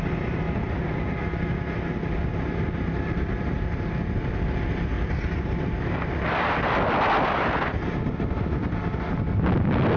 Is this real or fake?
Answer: real